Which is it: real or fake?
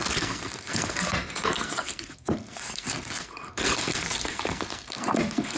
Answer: fake